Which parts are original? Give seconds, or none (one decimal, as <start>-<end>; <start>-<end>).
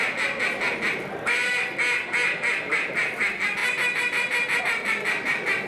0.0-5.7